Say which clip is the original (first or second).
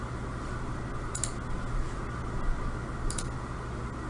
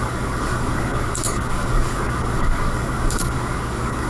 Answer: first